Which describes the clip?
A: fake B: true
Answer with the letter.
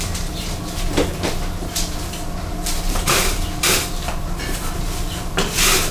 B